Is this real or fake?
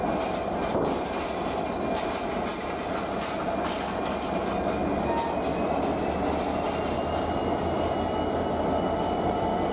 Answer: real